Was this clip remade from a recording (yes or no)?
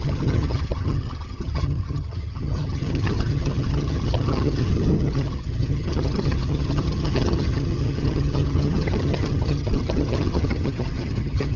yes